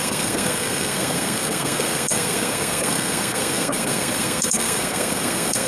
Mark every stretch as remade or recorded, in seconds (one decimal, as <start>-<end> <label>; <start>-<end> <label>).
0.0-5.7 remade